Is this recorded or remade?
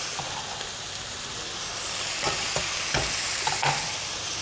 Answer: remade